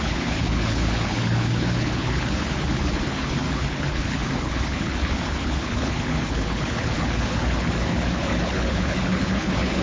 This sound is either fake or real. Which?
fake